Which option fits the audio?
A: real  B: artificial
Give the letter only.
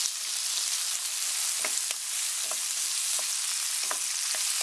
A